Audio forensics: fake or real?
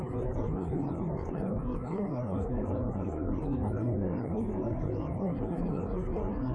fake